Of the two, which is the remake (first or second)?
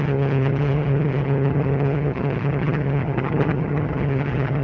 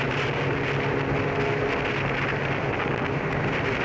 first